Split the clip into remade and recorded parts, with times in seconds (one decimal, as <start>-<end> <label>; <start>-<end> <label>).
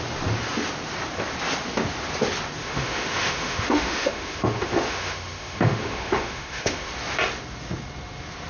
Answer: 0.0-2.6 recorded; 2.6-6.9 remade; 6.9-8.5 recorded